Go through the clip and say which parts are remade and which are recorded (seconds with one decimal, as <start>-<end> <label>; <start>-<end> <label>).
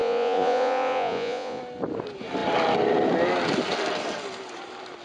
0.0-1.6 remade; 1.6-5.0 recorded